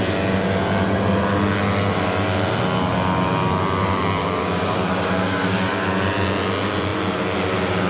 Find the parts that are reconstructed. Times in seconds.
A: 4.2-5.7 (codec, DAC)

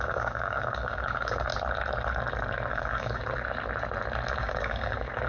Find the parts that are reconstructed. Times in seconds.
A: 0.0-1.5 (codec, DAC); 2.7-3.2; 4.4-5.3

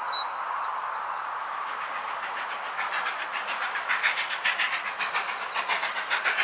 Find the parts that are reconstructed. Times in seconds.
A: none

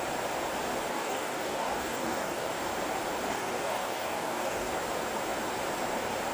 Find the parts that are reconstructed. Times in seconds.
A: 0.9-2.5 (codec, DAC); 3.3-4.7

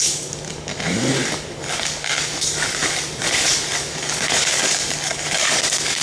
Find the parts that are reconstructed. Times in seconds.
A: 0.0-0.7 (codec, DAC); 1.4-6.0

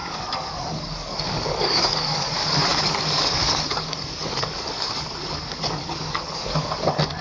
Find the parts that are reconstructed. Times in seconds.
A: 0.0-7.2 (codec, DAC)

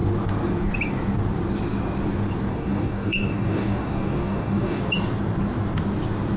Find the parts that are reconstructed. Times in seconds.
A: 2.5-4.8 (codec, DAC)